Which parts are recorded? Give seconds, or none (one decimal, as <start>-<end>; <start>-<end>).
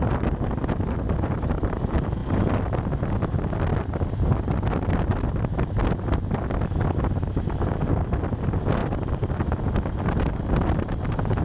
0.0-2.2; 3.0-8.8